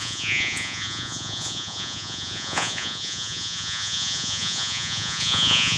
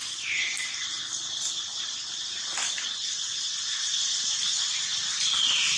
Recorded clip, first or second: second